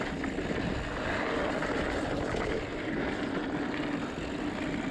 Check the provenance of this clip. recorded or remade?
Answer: recorded